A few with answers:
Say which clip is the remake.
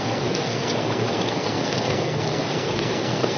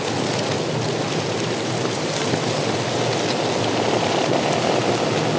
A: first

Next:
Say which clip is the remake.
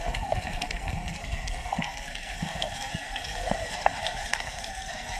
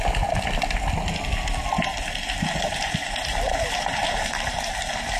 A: first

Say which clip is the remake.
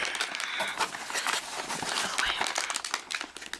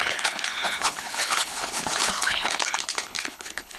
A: second